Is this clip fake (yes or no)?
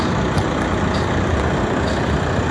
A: no